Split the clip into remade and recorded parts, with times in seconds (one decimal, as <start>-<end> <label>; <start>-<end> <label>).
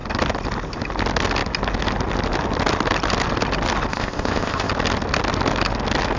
0.0-3.9 recorded; 3.9-4.7 remade; 4.7-6.2 recorded